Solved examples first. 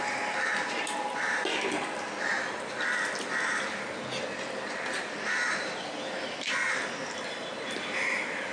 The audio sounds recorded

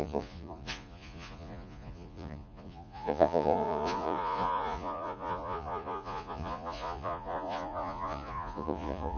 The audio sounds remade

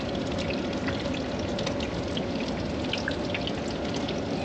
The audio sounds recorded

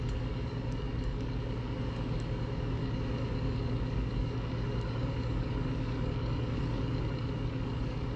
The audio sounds remade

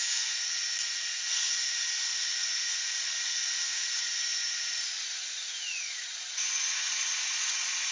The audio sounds remade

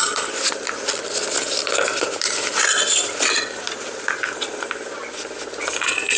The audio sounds recorded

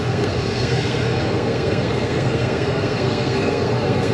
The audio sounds remade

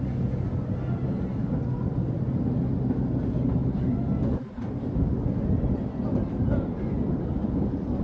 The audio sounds recorded